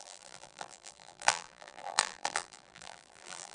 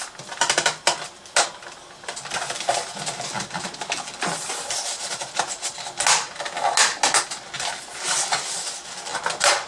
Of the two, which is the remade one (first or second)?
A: first